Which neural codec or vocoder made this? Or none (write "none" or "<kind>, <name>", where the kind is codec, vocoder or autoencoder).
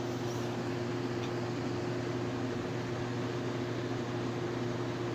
none